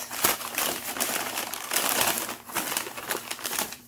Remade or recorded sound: remade